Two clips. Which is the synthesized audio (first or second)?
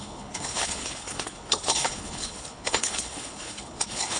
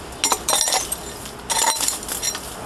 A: first